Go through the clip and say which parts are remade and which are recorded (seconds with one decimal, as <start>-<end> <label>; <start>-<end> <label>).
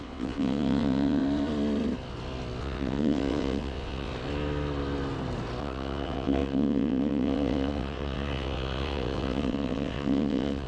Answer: 0.0-1.2 remade; 1.2-2.6 recorded; 2.6-4.1 remade; 4.1-5.6 recorded; 5.6-10.7 remade